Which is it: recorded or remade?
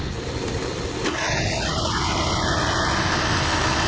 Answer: recorded